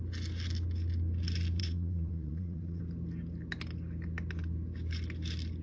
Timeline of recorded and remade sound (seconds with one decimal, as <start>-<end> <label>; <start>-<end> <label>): 0.0-1.6 recorded; 1.6-2.8 remade; 2.8-5.6 recorded